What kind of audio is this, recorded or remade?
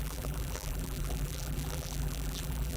remade